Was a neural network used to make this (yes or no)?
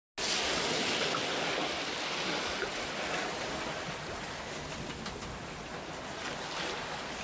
no